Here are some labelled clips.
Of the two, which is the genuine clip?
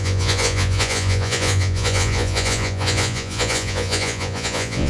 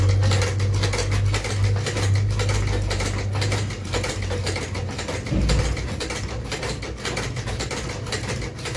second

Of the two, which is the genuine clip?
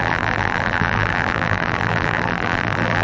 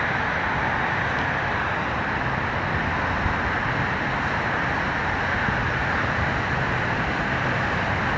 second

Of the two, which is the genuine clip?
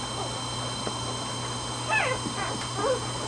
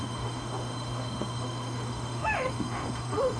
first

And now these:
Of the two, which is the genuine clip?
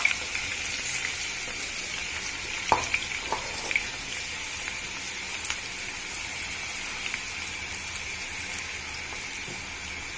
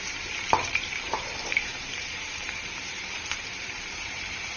first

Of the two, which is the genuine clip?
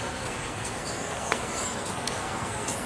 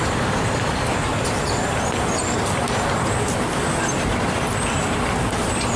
second